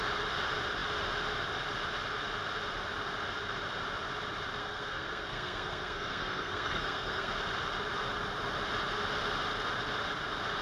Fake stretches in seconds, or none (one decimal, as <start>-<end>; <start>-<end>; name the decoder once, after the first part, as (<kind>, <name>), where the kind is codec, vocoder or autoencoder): 4.6-7.3 (codec, SNAC)